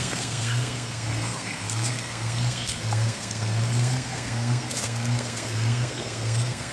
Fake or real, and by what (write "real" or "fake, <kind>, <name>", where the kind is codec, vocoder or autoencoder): fake, codec, SNAC